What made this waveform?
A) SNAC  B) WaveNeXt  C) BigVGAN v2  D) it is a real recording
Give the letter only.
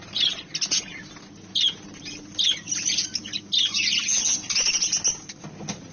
D